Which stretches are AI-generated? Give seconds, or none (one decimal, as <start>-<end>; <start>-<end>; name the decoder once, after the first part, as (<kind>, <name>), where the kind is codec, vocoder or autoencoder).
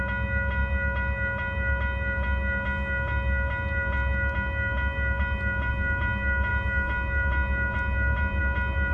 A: none